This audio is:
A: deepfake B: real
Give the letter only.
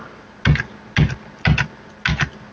B